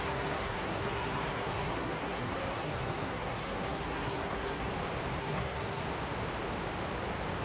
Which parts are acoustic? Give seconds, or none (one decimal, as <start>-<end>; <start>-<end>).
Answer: 4.7-5.2; 5.8-7.4